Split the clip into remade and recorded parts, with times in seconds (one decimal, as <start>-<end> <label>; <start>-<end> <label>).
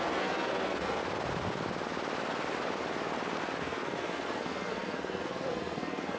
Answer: 0.0-1.0 remade; 1.0-3.6 recorded; 3.6-6.2 remade